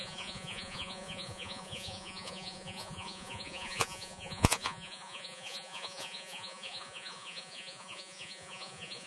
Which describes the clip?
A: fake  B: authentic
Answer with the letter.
A